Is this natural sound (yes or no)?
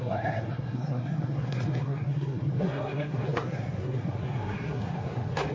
no